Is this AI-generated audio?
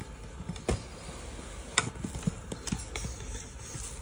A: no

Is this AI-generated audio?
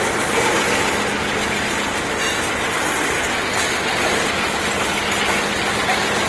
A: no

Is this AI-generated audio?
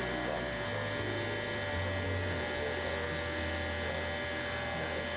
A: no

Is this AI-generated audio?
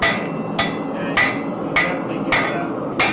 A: no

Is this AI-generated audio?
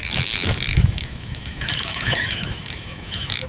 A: yes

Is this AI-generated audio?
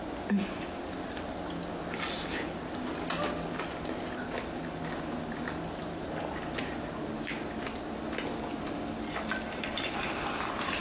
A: no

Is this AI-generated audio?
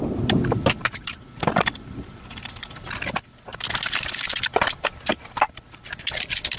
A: yes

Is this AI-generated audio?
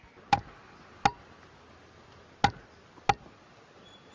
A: no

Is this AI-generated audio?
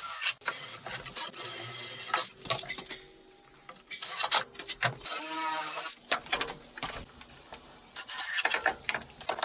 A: no